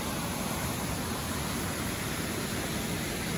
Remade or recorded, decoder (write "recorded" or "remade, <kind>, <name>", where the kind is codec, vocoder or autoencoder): remade, vocoder, BigVGAN v2